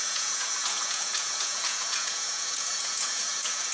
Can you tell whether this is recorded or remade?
remade